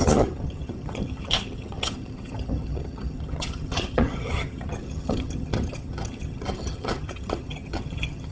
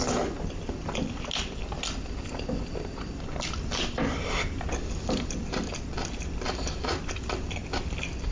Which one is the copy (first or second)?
first